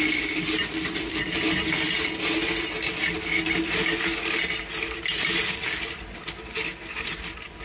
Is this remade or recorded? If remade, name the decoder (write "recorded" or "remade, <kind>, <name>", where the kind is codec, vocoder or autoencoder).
recorded